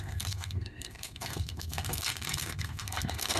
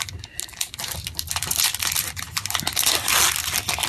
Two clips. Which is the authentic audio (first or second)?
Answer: second